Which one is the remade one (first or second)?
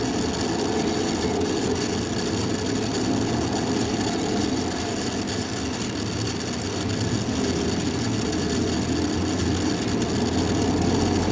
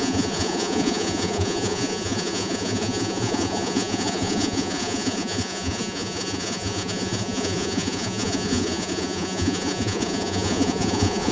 second